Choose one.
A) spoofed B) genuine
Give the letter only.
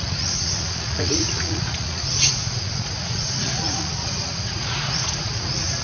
A